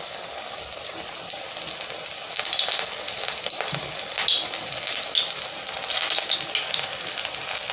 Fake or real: real